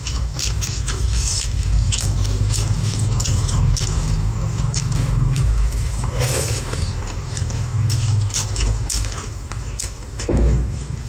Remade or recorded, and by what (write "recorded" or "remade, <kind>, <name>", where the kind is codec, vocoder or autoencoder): remade, codec, DAC